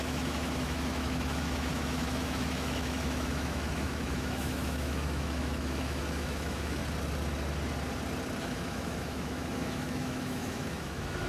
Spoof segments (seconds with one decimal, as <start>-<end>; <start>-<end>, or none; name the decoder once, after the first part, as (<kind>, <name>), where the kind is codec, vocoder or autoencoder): 0.0-6.8 (autoencoder, DAC-VAE); 8.4-11.3